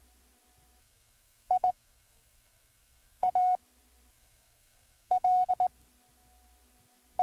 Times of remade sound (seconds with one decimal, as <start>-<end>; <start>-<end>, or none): 0.8-3.3; 4.1-5.5